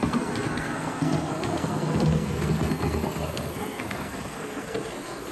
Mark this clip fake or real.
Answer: fake